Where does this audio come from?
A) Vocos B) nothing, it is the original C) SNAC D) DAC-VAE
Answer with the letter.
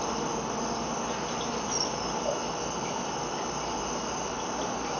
B